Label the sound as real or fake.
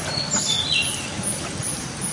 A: real